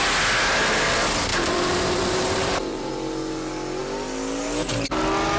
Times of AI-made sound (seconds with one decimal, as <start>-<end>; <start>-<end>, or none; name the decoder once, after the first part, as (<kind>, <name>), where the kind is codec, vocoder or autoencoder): 1.3-2.9 (vocoder, BigVGAN v2)